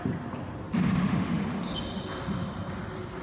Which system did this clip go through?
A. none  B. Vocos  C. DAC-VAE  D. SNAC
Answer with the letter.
A